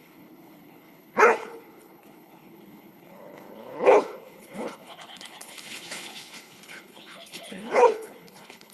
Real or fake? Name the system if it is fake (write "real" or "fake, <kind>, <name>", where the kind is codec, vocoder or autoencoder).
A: fake, codec, HILCodec